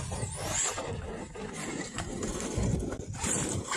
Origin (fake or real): fake